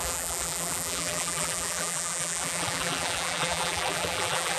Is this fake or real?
fake